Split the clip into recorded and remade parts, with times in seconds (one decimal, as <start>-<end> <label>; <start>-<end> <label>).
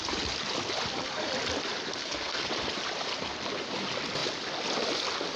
0.0-2.0 recorded; 2.0-2.5 remade; 2.5-5.4 recorded